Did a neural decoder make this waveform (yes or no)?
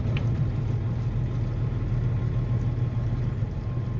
no